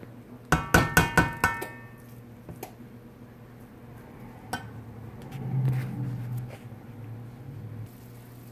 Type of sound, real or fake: real